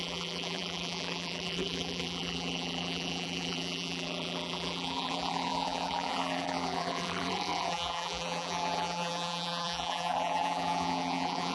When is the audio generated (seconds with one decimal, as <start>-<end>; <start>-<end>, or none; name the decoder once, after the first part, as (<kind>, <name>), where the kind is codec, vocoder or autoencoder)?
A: 0.0-11.5 (vocoder, BigVGAN v2)